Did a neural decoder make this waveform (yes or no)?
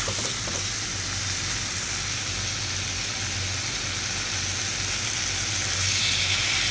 no